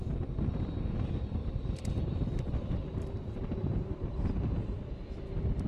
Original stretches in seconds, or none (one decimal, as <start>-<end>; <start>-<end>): 0.0-1.4; 4.8-5.7